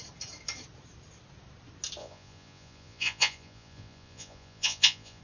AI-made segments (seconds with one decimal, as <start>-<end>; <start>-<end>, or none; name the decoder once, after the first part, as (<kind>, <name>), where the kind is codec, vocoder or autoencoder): 2.0-5.2 (vocoder, Vocos)